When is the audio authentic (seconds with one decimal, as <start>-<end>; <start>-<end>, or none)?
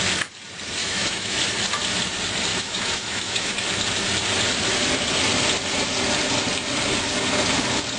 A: 0.0-0.8; 1.4-2.5; 3.5-8.0